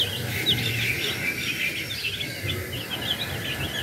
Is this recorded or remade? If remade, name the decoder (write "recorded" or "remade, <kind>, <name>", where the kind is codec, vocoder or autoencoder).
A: recorded